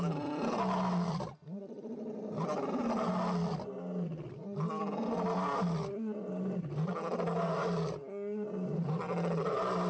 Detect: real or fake real